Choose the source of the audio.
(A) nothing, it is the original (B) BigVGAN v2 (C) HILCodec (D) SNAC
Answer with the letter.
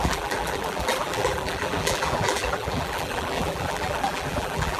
B